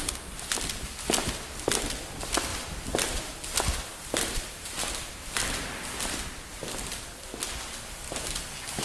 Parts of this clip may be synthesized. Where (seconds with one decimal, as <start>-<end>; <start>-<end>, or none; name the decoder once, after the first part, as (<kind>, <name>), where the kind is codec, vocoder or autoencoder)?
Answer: 2.5-3.3 (vocoder, BigVGAN v2); 3.9-5.3